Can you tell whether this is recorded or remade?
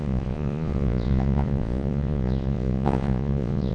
remade